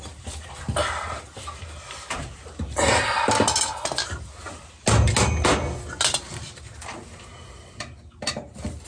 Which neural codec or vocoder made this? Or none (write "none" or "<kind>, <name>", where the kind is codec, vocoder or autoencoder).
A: none